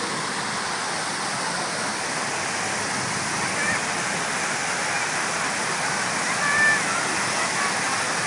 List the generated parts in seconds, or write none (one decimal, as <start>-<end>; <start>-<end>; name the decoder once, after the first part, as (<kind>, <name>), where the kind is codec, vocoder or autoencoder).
none